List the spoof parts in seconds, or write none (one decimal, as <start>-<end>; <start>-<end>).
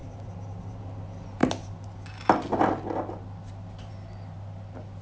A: 0.0-0.8